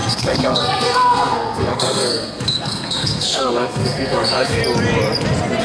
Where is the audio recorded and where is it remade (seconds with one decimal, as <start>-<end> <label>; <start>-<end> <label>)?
0.0-4.6 remade; 4.6-5.6 recorded